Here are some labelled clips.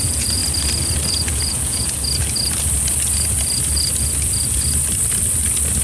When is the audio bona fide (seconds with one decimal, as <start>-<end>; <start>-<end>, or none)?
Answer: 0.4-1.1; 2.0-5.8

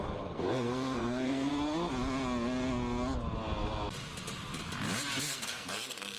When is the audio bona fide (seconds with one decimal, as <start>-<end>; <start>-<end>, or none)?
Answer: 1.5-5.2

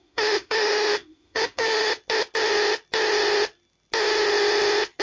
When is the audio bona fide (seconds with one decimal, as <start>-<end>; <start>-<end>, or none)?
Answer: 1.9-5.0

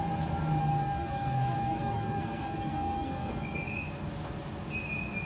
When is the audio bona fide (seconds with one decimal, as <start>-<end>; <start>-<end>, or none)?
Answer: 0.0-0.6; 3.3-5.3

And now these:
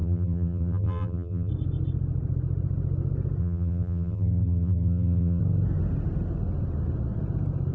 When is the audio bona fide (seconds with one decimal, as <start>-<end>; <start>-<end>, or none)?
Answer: 1.5-3.4; 5.4-7.7

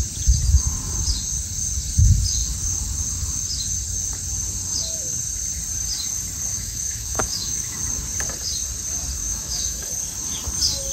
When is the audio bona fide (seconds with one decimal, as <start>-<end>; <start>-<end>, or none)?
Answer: 0.0-6.5; 7.8-9.2; 9.8-10.9

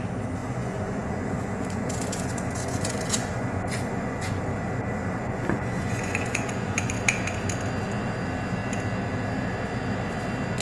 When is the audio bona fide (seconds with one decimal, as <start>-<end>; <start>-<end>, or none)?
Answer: 0.0-0.4; 4.4-5.2; 7.0-10.6